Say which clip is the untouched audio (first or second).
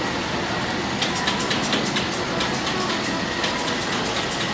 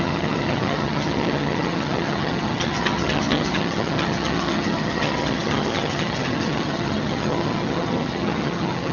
first